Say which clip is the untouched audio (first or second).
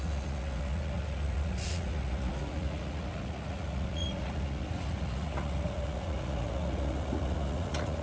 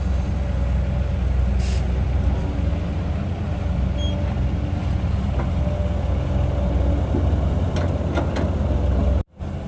second